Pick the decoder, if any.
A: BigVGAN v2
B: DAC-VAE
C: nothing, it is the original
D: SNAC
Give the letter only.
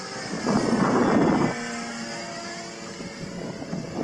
C